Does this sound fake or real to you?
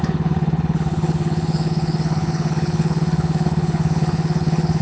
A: fake